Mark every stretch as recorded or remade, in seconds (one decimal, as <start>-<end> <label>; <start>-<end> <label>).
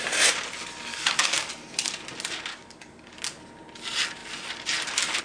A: 0.0-0.9 recorded; 0.9-1.5 remade; 1.5-2.5 recorded; 2.5-3.2 remade; 3.2-5.2 recorded